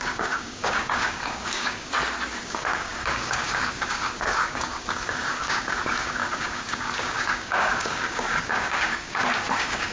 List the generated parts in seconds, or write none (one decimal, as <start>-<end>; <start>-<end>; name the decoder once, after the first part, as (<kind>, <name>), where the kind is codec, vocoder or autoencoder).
0.0-1.9 (codec, DAC); 2.4-9.9